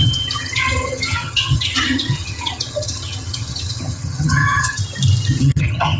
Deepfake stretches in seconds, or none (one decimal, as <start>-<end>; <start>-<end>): 0.0-4.8; 5.4-6.0